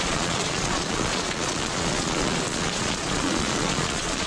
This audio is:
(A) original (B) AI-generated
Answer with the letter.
B